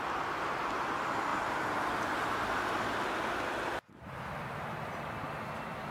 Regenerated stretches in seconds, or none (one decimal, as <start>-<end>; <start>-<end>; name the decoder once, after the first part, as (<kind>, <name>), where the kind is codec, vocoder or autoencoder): none